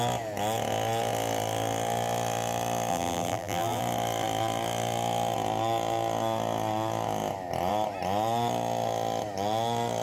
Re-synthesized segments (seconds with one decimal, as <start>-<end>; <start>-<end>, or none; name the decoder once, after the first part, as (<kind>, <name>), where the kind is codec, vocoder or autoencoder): 2.9-3.8 (vocoder, BigVGAN v2)